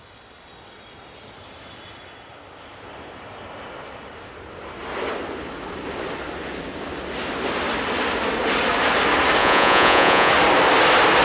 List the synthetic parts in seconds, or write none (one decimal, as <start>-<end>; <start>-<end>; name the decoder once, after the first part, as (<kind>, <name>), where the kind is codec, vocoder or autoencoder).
9.4-10.3 (vocoder, Vocos)